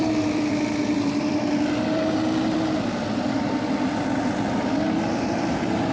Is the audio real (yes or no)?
no